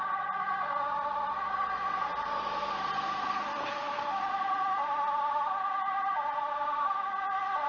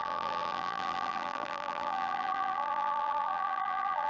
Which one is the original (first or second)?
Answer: first